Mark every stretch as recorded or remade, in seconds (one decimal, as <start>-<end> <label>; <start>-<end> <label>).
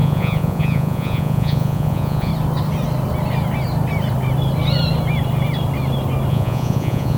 0.0-2.3 remade; 2.3-6.3 recorded; 6.3-7.2 remade